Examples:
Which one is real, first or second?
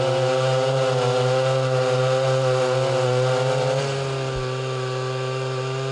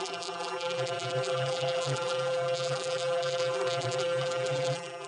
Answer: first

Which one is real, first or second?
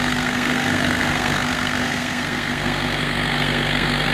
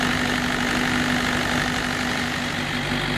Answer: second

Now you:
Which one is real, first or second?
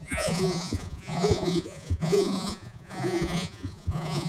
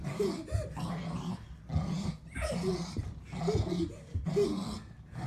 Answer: second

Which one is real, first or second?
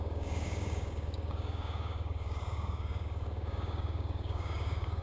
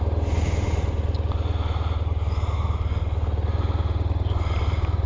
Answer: second